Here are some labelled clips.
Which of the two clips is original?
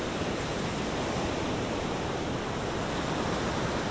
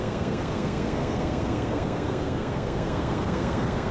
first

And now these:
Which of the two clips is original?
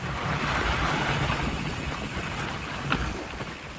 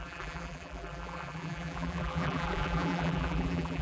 first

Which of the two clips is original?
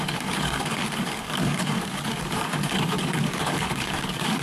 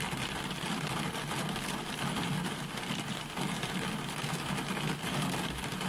second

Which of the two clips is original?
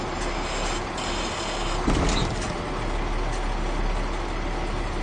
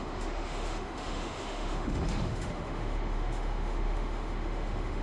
first